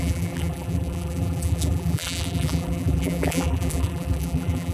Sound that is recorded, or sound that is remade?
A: remade